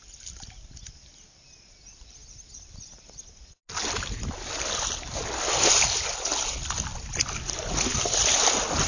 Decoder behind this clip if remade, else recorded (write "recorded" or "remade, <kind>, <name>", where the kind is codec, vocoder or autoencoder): recorded